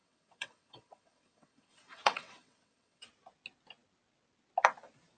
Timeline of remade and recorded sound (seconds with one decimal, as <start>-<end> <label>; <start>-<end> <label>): 0.0-3.1 remade; 3.1-5.2 recorded